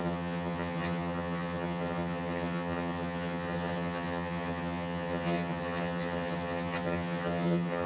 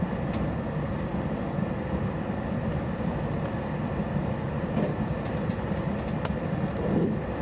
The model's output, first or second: first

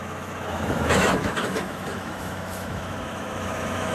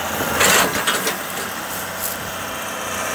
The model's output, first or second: first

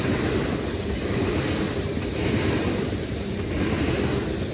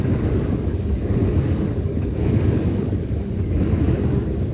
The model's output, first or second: second